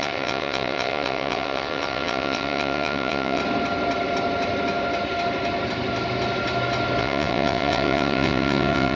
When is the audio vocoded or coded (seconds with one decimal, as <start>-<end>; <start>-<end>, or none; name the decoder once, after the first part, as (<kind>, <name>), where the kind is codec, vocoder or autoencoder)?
0.0-3.4 (vocoder, WaveNeXt); 7.0-8.9